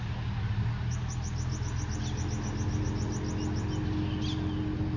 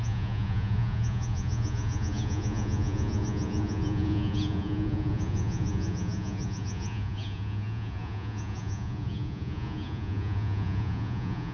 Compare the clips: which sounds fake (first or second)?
second